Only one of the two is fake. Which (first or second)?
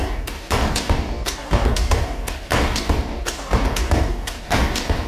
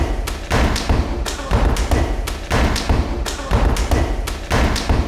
first